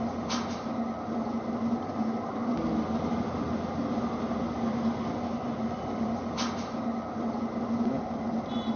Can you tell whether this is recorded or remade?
recorded